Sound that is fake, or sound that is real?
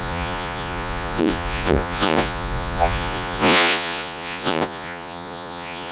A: fake